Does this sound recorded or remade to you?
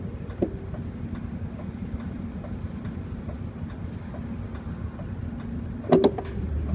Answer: recorded